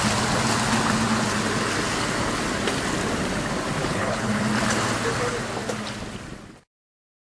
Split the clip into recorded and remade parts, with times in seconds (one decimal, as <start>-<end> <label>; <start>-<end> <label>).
0.0-3.8 recorded; 3.8-4.4 remade; 4.4-7.2 recorded